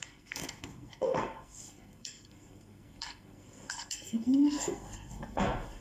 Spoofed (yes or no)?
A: yes